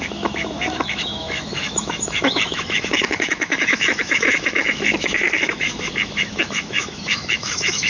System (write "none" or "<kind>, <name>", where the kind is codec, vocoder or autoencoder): autoencoder, DAC-VAE